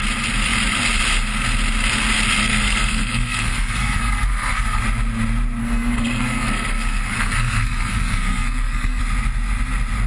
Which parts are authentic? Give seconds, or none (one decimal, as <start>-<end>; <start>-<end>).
0.0-2.4; 4.8-5.6; 9.0-10.1